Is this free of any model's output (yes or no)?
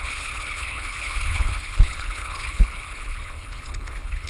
no